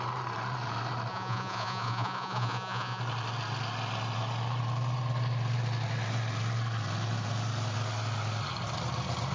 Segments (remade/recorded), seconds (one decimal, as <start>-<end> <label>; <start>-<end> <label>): 0.0-1.1 recorded; 1.1-3.0 remade; 3.0-9.3 recorded